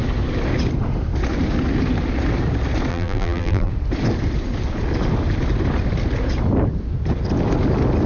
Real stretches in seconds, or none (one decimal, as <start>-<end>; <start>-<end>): 0.0-2.9; 3.7-8.1